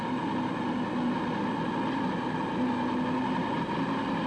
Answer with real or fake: real